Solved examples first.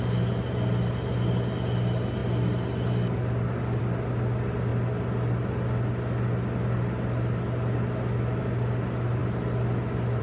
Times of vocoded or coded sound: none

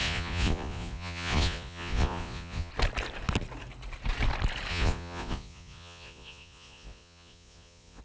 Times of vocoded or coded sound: 0.0-2.7 (vocoder, Vocos); 4.7-8.0

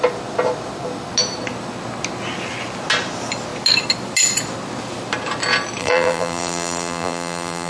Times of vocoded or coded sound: 5.8-7.7 (vocoder, BigVGAN v2)

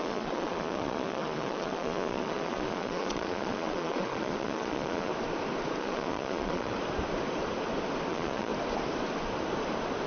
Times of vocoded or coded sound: 0.0-5.1 (vocoder, Vocos); 5.8-6.7; 8.1-8.5